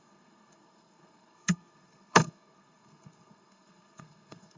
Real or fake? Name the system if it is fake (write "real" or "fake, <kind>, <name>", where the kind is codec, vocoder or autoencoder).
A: fake, codec, SNAC